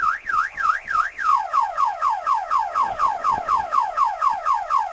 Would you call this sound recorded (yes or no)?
no